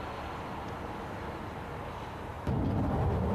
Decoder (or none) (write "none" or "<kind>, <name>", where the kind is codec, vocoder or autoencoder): none